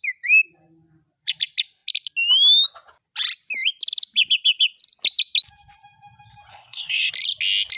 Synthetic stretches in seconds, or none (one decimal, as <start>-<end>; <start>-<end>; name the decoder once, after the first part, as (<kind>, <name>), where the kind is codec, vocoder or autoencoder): 6.5-7.1 (codec, SNAC)